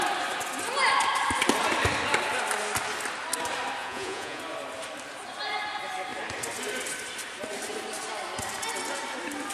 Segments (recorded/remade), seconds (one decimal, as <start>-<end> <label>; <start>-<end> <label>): 0.0-3.8 recorded; 3.8-4.4 remade; 4.4-9.5 recorded